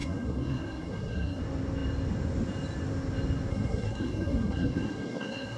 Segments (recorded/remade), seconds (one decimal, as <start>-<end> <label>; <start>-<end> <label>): 0.0-1.4 remade; 1.4-3.5 recorded; 3.5-5.6 remade